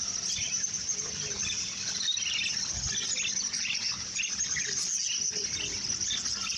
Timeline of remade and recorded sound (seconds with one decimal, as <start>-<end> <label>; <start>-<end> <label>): 0.0-6.6 recorded